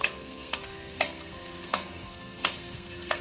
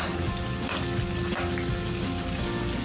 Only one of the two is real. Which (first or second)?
second